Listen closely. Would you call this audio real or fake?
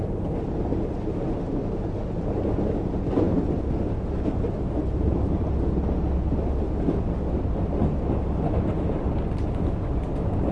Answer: real